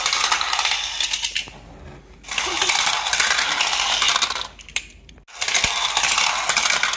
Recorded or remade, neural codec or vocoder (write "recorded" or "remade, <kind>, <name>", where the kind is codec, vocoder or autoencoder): recorded